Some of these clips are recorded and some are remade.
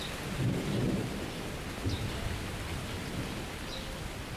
recorded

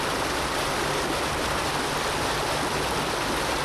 recorded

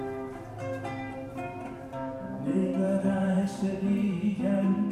remade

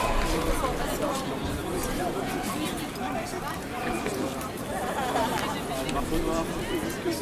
recorded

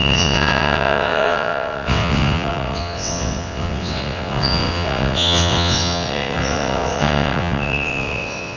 remade